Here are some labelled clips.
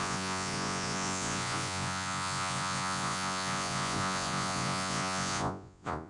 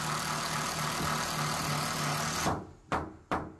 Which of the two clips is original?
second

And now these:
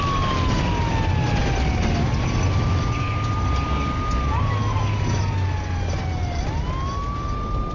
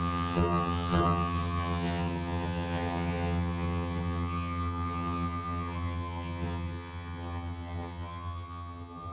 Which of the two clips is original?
first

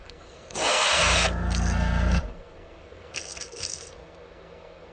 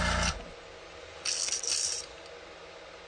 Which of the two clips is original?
second